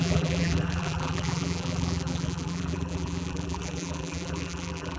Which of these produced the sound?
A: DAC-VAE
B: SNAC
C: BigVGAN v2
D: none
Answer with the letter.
C